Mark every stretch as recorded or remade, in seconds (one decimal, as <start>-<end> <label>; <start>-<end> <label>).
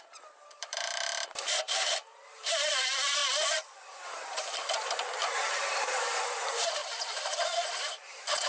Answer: 0.0-3.2 remade; 3.2-3.9 recorded; 3.9-6.8 remade; 6.8-7.8 recorded; 7.8-8.5 remade